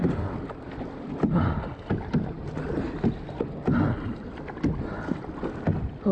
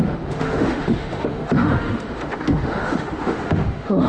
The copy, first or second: second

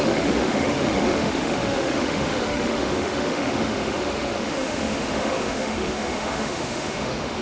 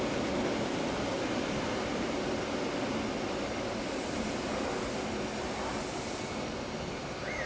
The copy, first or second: first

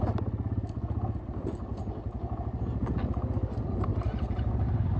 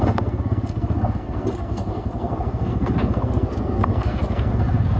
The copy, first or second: second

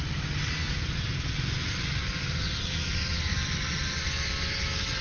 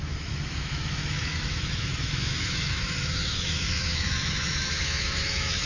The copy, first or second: second